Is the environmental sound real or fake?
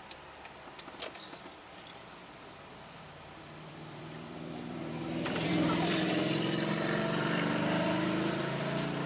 fake